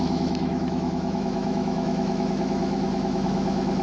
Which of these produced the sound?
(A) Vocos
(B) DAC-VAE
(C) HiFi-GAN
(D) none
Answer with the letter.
B